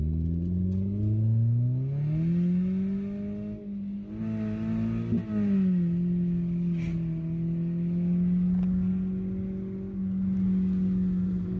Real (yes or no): yes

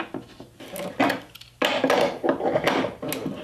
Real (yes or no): yes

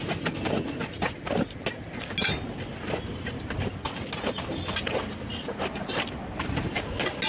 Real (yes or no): yes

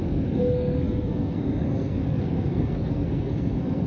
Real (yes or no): no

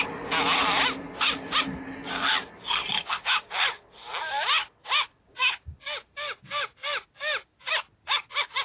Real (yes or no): yes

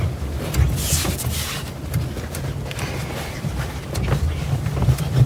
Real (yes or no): yes